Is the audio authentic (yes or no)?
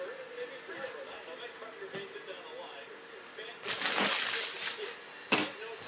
yes